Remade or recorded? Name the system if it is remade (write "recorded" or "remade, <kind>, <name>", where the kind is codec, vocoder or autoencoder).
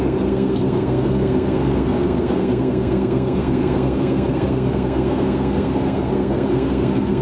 remade, codec, SNAC